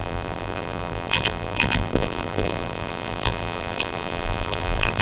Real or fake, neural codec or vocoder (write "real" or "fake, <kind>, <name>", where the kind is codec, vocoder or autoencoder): fake, vocoder, BigVGAN v2